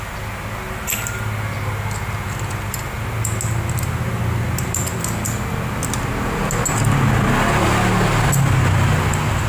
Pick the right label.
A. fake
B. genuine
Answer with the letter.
B